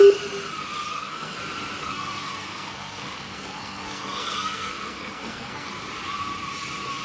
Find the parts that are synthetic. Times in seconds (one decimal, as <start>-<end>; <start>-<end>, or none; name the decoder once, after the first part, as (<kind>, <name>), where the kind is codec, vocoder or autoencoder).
0.9-1.4 (codec, SNAC); 1.8-5.7